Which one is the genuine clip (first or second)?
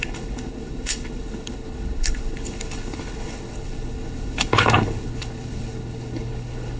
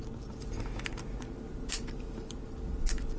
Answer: second